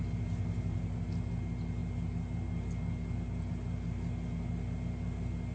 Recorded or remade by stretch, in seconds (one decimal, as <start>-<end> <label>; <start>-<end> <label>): 0.0-5.5 recorded